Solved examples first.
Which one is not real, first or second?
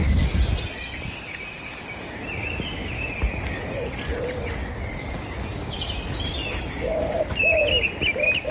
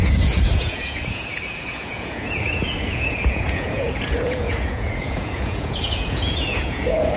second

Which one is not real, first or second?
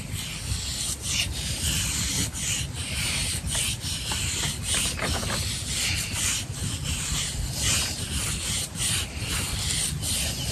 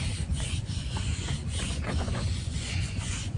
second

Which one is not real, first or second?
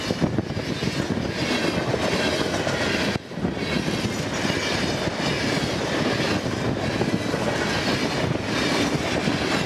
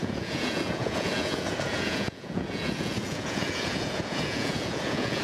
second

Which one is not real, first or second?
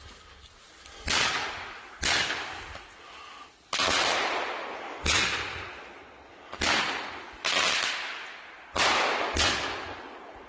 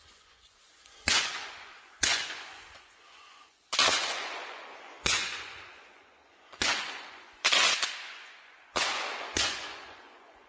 second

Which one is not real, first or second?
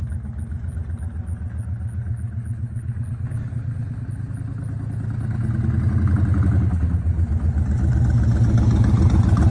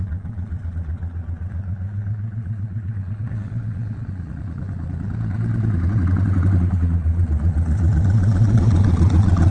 second